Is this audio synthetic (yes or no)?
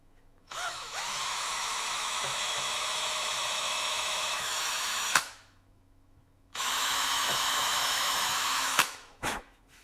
yes